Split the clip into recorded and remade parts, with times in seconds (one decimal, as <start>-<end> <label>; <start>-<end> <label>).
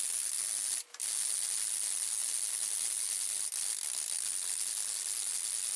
0.0-5.8 recorded